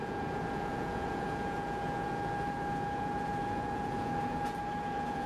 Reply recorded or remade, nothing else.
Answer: remade